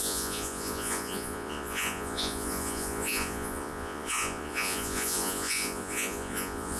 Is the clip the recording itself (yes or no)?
no